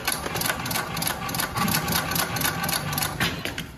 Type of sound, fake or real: real